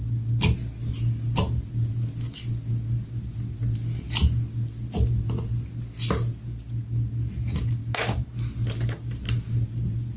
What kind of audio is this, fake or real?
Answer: real